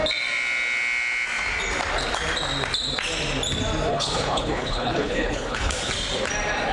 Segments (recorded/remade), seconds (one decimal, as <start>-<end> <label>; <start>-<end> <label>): 0.0-3.9 recorded; 3.9-5.9 remade; 5.9-6.7 recorded